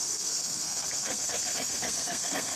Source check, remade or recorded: remade